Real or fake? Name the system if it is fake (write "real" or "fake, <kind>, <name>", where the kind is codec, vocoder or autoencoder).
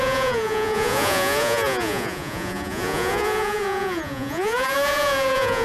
fake, vocoder, Vocos